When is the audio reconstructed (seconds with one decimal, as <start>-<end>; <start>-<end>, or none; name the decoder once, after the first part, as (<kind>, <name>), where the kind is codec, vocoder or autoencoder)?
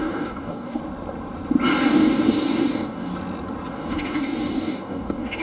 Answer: 0.0-0.8 (codec, DAC); 1.8-3.1; 3.7-5.4